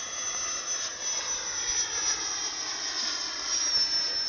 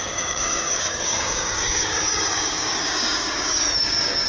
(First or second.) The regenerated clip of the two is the second